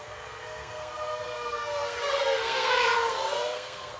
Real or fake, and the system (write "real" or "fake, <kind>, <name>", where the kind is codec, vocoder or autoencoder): fake, codec, SNAC